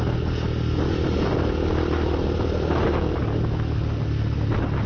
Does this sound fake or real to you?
real